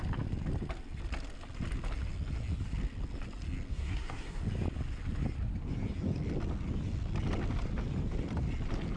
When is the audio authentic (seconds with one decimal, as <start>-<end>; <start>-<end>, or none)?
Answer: 0.0-3.7; 4.4-9.0